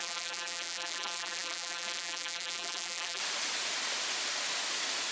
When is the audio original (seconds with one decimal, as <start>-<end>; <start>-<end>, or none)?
3.2-5.1

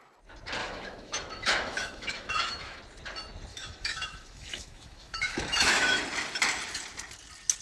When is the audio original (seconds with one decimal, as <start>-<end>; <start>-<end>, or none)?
0.0-0.6; 2.8-3.5; 6.0-7.6

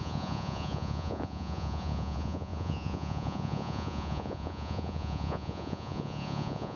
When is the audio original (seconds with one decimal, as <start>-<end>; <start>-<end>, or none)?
none

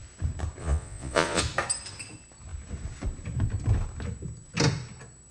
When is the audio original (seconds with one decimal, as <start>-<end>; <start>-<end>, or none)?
0.0-0.6; 1.4-5.3

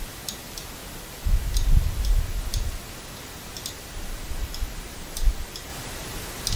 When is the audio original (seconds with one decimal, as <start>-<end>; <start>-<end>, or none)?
0.0-6.6

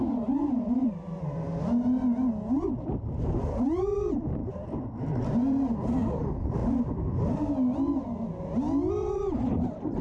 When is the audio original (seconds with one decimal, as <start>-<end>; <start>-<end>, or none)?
1.5-3.8; 6.6-8.9

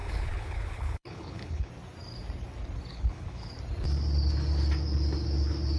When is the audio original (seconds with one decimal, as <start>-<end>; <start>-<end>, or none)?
1.7-2.9; 3.5-5.8

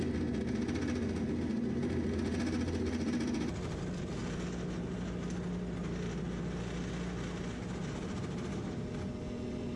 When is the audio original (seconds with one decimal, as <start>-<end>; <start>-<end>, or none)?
0.0-9.8